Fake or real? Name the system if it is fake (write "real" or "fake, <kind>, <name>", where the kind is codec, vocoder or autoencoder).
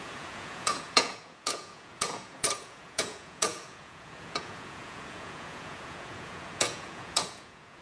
fake, vocoder, Vocos